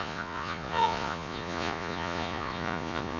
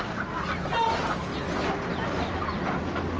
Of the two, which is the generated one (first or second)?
first